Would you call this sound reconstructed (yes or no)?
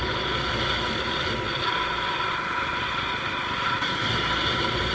no